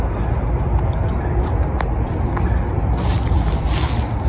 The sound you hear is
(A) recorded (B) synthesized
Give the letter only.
A